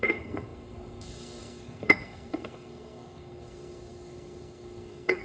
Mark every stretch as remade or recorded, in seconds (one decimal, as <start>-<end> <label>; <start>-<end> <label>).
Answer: 0.0-5.2 remade